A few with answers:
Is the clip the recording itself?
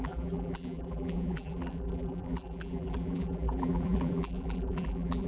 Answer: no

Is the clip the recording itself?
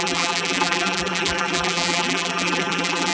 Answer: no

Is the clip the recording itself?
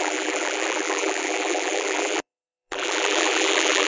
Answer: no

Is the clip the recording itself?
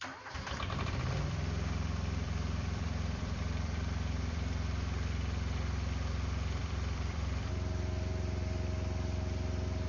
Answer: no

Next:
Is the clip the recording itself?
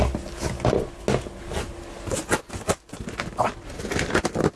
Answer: yes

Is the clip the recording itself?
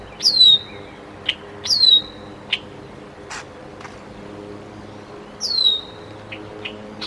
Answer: yes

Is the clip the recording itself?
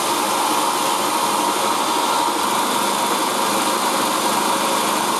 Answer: yes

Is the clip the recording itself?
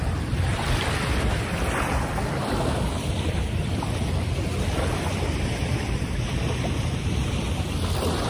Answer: no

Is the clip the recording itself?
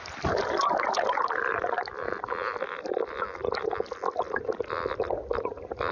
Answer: yes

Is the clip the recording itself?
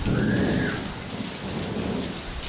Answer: no